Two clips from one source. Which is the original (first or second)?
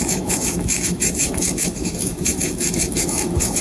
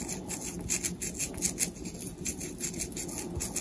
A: second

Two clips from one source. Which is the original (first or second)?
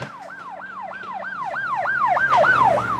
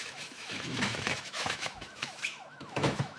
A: first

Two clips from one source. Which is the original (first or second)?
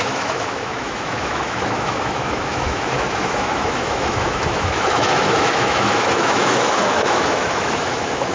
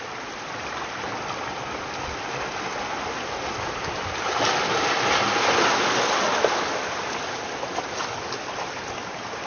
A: second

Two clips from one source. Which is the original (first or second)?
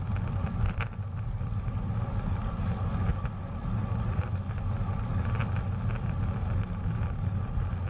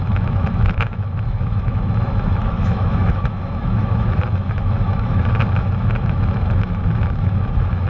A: first